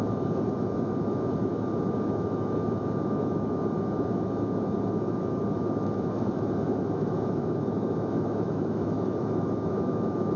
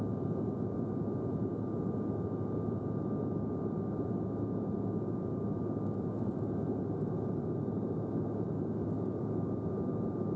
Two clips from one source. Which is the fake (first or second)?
first